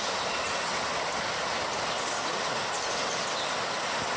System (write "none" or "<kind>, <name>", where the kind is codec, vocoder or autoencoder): none